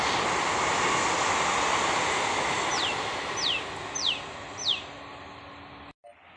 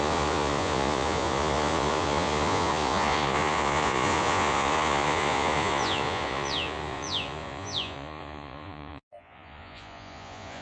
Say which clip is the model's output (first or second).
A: second